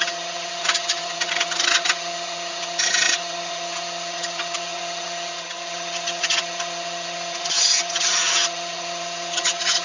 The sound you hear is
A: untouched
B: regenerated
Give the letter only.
B